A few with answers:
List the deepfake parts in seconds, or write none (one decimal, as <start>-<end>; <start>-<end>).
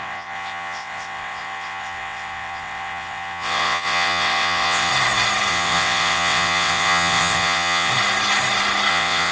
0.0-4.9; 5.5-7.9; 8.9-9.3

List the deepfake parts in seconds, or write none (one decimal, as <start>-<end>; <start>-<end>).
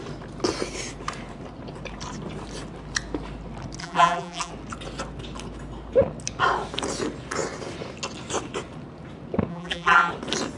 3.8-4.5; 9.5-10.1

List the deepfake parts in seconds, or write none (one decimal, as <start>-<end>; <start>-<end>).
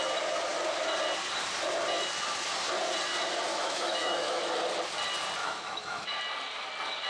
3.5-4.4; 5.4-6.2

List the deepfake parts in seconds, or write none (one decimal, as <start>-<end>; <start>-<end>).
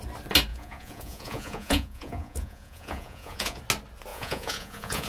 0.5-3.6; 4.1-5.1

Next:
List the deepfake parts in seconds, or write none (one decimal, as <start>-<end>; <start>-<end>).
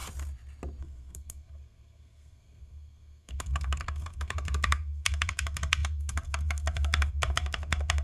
0.8-8.0